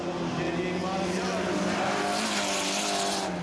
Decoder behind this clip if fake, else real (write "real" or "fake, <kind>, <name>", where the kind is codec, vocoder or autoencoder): real